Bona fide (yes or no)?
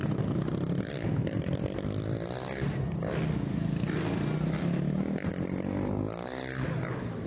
yes